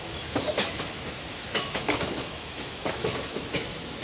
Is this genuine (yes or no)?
no